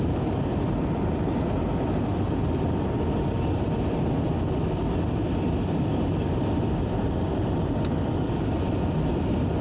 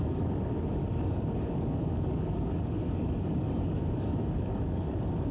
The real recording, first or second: first